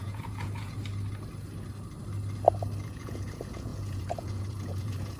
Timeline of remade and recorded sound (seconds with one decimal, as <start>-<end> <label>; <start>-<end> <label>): 0.0-0.8 remade; 0.8-2.9 recorded; 2.9-5.2 remade